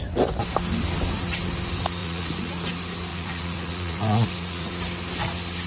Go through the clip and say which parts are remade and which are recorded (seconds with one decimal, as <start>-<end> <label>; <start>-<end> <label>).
0.0-2.0 recorded; 2.0-2.7 remade; 2.7-3.1 recorded; 3.1-4.7 remade; 4.7-5.7 recorded